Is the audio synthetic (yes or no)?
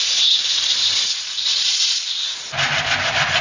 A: no